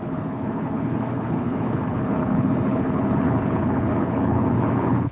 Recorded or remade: remade